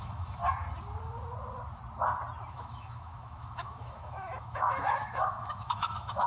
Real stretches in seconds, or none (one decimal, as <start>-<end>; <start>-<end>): 0.4-2.5